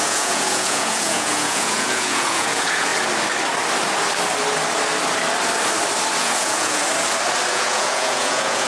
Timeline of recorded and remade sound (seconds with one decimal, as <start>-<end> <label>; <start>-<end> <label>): 0.0-2.9 remade; 2.9-6.2 recorded; 6.2-6.8 remade; 6.8-7.5 recorded; 7.5-8.7 remade